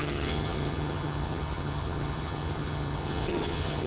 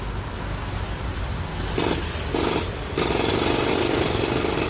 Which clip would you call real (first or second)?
second